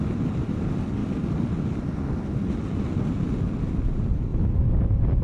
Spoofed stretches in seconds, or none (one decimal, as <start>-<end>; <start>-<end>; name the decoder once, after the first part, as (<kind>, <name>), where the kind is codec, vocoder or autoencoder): 1.0-1.7 (vocoder, BigVGAN v2)